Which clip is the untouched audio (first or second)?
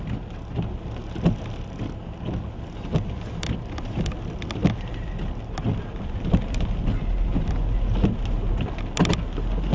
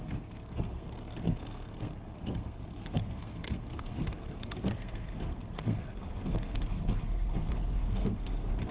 first